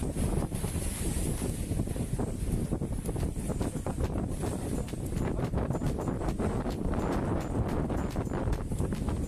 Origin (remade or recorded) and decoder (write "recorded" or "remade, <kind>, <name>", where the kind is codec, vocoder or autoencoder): recorded